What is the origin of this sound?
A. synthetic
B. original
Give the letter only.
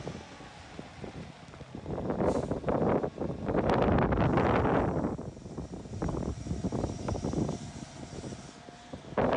B